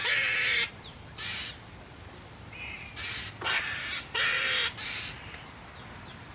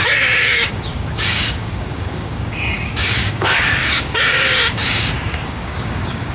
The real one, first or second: first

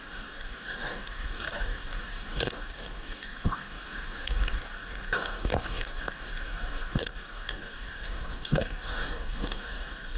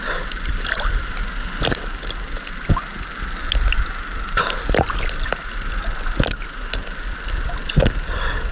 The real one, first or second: second